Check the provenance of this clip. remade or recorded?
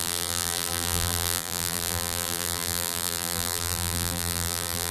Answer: remade